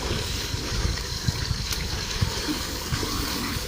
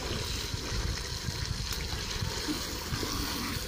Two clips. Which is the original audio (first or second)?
second